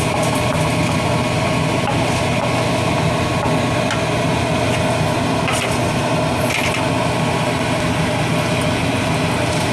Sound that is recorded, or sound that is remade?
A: recorded